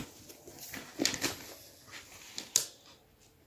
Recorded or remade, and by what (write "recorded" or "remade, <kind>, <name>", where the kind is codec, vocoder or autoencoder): recorded